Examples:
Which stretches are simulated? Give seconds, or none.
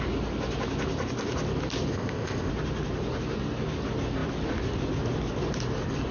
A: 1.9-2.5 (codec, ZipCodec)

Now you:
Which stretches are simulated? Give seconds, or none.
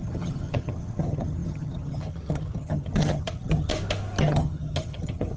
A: 0.0-3.7 (vocoder, HiFi-GAN); 4.2-5.4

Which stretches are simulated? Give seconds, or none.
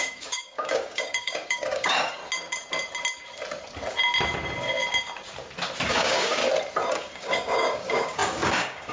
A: 0.0-2.2 (codec, DAC); 5.9-6.4; 6.9-8.9